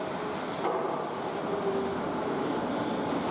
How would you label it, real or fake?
real